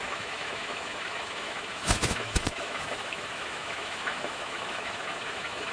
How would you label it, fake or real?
fake